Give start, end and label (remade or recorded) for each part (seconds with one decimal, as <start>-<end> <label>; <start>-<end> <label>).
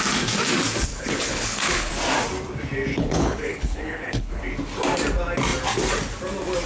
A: 0.0-0.9 recorded; 0.9-1.9 remade; 1.9-2.9 recorded; 2.9-4.4 remade; 4.4-6.7 recorded